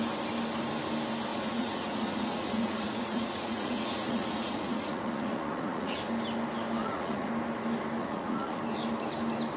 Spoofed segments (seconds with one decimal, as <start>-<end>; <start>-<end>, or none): 1.3-6.0; 6.8-7.3; 8.0-8.6